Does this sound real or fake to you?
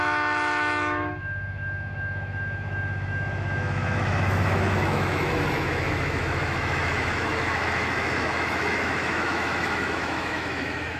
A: fake